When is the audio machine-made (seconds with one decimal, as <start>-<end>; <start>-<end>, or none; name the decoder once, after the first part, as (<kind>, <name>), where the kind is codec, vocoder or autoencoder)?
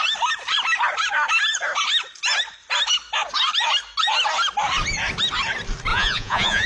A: 5.9-6.7 (vocoder, Vocos)